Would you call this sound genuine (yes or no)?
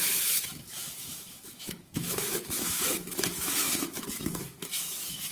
no